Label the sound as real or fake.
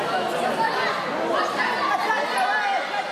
real